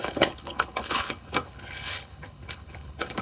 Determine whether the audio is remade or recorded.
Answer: remade